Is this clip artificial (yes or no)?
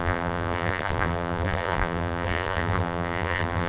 yes